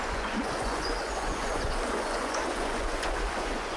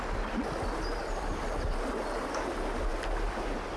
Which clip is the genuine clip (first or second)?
second